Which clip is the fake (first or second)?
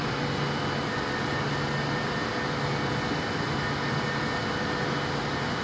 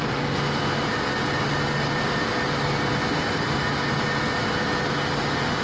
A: second